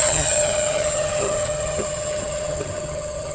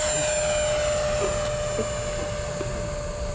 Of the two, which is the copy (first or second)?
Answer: first